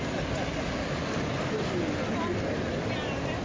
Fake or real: real